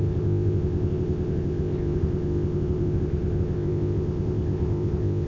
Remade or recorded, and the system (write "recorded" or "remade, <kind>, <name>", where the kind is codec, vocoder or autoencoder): remade, codec, ZipCodec